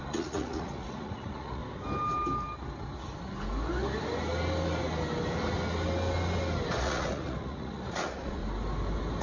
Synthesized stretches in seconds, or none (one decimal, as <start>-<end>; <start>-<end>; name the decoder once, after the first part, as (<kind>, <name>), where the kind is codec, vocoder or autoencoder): 0.0-1.6 (vocoder, Vocos); 6.8-8.4